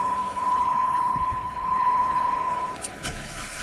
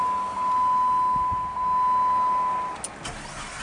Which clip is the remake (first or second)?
first